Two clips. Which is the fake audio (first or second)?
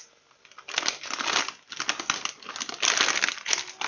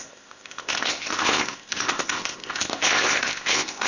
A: second